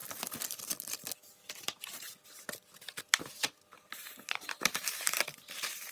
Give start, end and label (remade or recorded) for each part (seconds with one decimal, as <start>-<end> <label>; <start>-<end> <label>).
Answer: 0.0-3.2 recorded; 3.2-5.9 remade